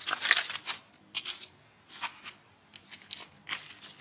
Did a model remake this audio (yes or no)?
no